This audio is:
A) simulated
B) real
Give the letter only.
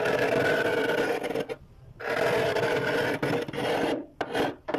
B